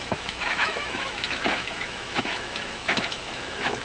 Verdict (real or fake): fake